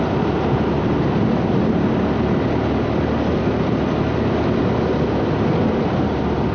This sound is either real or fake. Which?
real